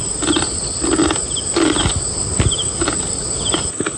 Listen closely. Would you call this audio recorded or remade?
recorded